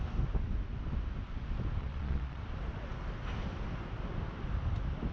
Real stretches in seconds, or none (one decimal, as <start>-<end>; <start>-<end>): 0.0-1.8; 2.4-5.1